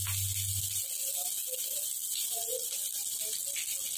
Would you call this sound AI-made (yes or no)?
no